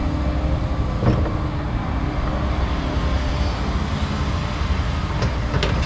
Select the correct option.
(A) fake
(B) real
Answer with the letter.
B